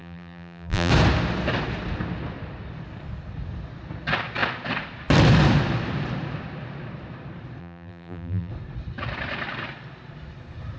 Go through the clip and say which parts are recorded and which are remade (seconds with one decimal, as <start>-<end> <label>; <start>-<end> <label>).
0.0-0.9 remade; 0.9-7.6 recorded; 7.6-8.5 remade; 8.5-10.8 recorded